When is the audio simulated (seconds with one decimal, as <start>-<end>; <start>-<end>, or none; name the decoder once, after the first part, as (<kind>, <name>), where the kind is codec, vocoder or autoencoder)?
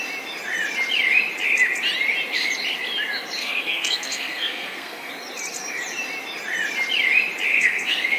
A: 3.4-5.1 (codec, SNAC); 7.5-8.2